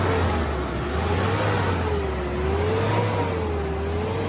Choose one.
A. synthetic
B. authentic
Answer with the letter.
B